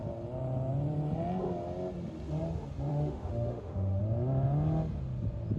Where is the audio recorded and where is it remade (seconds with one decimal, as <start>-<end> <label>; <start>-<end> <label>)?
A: 0.0-2.9 recorded; 2.9-4.0 remade; 4.0-5.6 recorded